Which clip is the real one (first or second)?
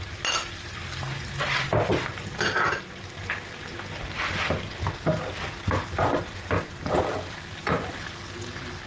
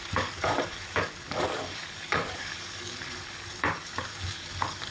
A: first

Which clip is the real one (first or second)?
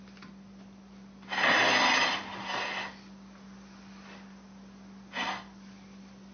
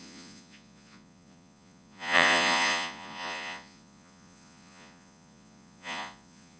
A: first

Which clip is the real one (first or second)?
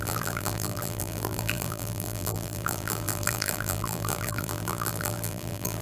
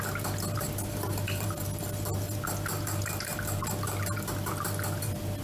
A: second